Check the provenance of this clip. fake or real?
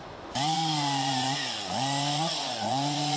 fake